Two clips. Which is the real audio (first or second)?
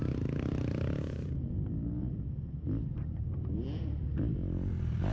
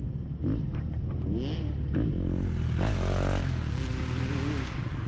second